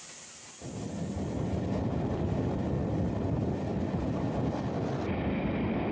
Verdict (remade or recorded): recorded